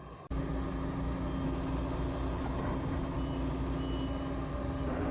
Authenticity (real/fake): real